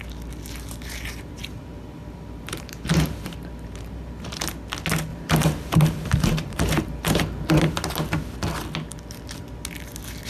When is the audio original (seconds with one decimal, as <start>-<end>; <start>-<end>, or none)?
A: 0.0-1.4; 4.4-5.1; 7.5-10.3